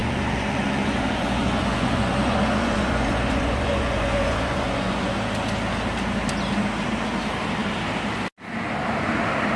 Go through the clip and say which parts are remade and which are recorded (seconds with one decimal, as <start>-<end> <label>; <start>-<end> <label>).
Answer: 0.0-5.1 remade; 5.1-9.6 recorded

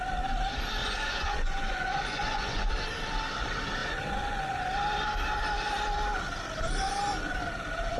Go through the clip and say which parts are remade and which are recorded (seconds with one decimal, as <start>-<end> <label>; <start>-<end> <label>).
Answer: 0.0-0.8 recorded; 0.8-2.7 remade; 2.7-3.8 recorded; 3.8-4.7 remade; 4.7-8.0 recorded

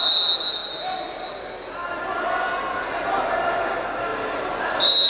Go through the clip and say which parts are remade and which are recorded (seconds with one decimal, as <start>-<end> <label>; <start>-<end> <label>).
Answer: 0.0-5.1 recorded

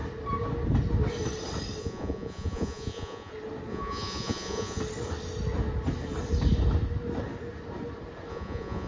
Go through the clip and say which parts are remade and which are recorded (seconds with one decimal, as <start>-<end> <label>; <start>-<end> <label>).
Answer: 0.0-1.8 recorded; 1.8-3.3 remade; 3.3-3.7 recorded; 3.7-4.8 remade; 4.8-8.3 recorded; 8.3-8.9 remade

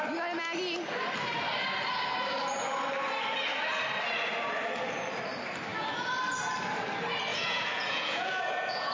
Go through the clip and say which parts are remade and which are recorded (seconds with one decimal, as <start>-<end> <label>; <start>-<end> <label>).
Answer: 0.0-7.3 recorded; 7.3-8.9 remade

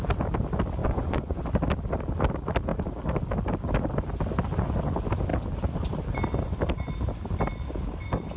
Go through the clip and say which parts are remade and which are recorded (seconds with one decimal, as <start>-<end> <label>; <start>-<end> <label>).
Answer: 0.0-0.8 recorded; 0.8-1.4 remade; 1.4-8.4 recorded